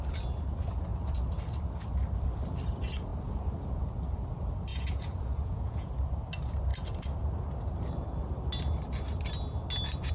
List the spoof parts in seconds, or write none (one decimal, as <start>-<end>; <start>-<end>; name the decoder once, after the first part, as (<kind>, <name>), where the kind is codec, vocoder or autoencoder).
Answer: 4.7-5.9 (vocoder, Vocos)